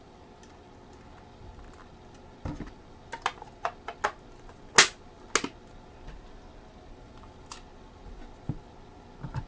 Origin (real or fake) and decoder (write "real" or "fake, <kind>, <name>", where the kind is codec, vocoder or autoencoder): real